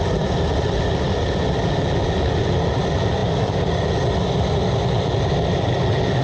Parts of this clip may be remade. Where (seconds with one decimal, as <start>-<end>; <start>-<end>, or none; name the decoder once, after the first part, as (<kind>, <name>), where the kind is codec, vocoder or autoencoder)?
none